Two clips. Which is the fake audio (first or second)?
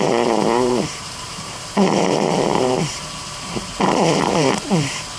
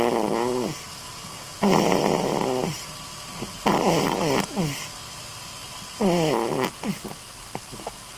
first